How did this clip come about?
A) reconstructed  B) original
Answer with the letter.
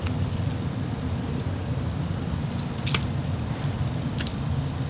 A